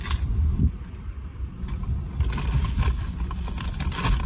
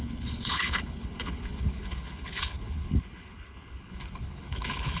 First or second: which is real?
first